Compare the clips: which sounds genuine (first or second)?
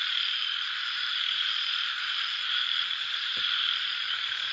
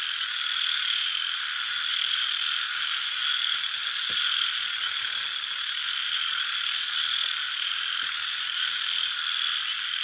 second